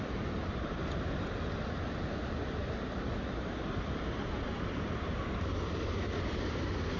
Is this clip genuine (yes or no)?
yes